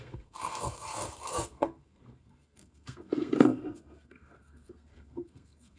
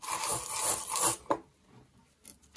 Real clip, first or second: second